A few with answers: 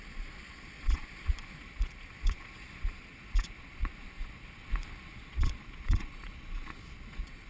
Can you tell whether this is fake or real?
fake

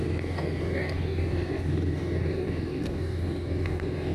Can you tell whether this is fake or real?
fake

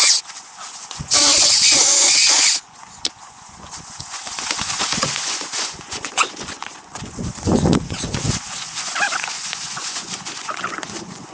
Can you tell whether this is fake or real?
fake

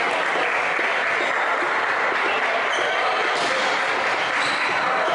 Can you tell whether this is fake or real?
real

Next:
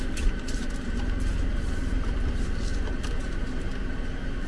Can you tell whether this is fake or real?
real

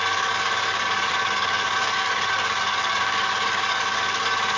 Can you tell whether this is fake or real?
fake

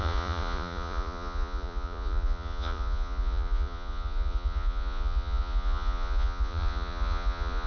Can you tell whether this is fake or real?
fake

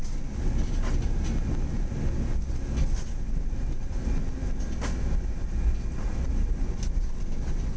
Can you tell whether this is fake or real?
real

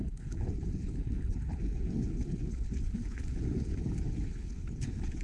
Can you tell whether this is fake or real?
fake